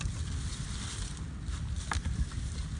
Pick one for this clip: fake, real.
real